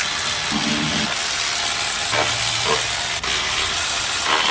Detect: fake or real real